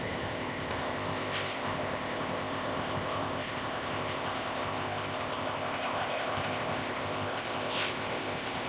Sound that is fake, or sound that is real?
fake